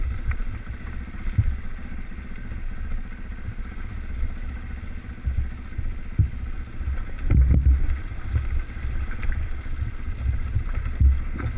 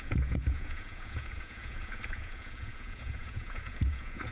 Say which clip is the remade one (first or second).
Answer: second